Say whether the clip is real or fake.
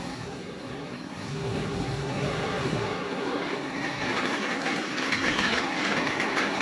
fake